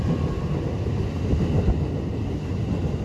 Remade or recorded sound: recorded